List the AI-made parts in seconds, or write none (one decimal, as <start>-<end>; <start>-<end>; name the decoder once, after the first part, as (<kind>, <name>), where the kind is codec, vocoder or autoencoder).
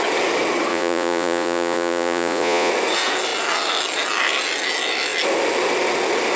0.7-2.7 (vocoder, Vocos)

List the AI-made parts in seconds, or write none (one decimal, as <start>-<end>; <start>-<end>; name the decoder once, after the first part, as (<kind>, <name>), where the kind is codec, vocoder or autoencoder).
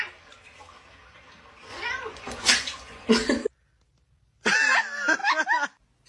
1.7-3.1 (vocoder, Vocos)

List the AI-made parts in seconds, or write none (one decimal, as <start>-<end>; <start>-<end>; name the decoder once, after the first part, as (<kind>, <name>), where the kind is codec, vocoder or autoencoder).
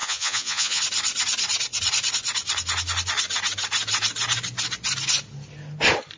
0.0-0.8 (vocoder, Vocos)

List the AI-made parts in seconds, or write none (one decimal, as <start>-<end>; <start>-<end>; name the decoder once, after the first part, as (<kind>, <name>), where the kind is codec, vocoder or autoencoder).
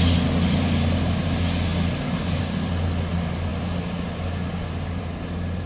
none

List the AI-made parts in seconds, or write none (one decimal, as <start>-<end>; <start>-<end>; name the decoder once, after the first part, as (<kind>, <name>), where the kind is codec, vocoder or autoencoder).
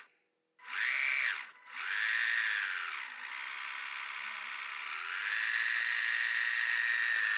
none